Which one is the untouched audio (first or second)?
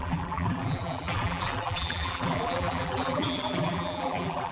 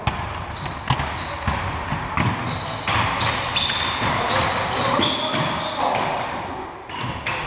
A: second